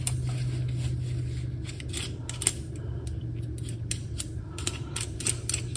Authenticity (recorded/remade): recorded